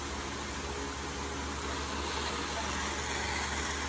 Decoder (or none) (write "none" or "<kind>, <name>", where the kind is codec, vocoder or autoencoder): none